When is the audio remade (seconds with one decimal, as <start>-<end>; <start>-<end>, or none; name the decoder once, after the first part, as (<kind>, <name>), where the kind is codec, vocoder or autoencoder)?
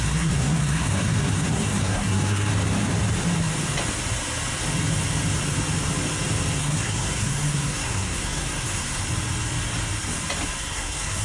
0.0-2.5 (codec, SNAC); 6.6-9.0; 10.6-11.2